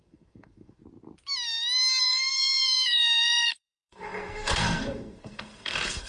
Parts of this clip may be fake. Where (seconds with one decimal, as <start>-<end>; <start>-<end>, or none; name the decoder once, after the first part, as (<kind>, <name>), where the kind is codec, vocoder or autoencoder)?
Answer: 0.0-0.8 (codec, SNAC); 2.0-6.1